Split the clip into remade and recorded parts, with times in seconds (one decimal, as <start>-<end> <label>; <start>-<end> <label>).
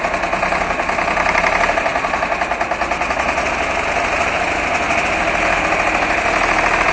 0.0-6.9 recorded